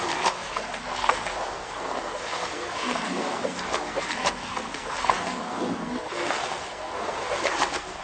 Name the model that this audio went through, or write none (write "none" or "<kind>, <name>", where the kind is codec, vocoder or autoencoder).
codec, SNAC